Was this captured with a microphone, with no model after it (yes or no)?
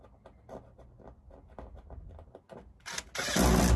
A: yes